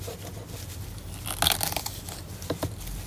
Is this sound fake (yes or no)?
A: no